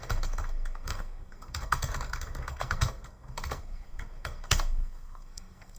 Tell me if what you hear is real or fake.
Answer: fake